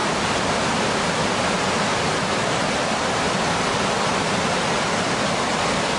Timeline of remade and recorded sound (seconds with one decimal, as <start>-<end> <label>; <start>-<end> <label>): 0.0-6.0 recorded